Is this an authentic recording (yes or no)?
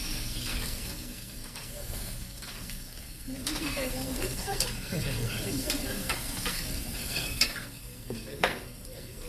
no